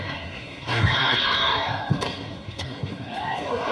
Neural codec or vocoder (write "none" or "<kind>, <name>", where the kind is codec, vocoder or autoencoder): codec, SNAC